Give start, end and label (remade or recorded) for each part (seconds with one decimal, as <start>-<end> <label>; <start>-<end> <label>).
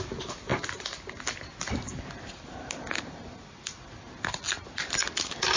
0.0-5.6 recorded